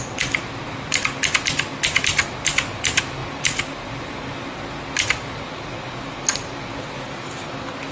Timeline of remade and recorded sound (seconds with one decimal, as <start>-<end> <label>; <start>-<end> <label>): 0.0-7.9 recorded